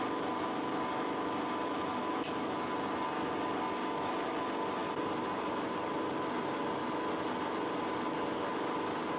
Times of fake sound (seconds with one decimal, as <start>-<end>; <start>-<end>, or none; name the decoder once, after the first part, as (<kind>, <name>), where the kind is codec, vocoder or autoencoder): none